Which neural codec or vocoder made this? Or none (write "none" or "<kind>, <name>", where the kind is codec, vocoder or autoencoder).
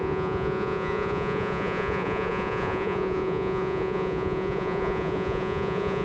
vocoder, Vocos